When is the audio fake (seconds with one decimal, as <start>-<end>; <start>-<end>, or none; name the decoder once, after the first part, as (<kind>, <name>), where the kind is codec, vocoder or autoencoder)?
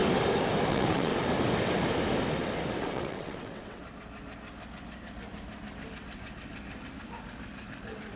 0.7-1.1 (vocoder, WaveNeXt); 2.8-3.8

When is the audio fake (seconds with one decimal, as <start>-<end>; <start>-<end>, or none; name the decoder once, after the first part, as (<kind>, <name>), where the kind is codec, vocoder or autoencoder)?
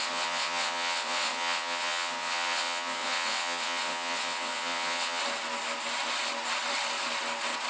0.0-5.2 (vocoder, WaveNeXt)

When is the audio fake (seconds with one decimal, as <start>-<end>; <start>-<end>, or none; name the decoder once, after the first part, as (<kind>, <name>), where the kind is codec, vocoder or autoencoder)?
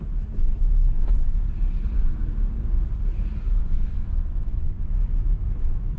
3.6-4.9 (vocoder, WaveNeXt)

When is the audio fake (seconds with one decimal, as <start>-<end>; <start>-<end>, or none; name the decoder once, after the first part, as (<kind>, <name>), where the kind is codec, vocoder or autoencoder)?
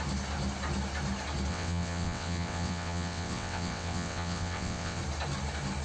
1.5-5.0 (vocoder, WaveNeXt)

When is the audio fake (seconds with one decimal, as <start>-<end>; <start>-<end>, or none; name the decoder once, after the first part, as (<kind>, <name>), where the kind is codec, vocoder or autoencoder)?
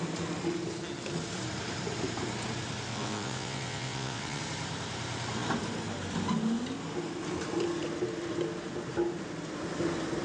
2.9-4.4 (vocoder, WaveNeXt)